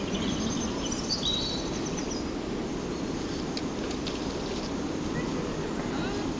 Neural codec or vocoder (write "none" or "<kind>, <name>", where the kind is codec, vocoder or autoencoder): none